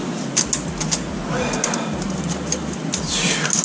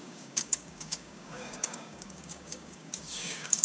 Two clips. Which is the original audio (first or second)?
first